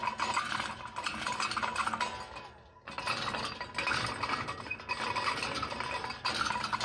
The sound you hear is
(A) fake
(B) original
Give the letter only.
B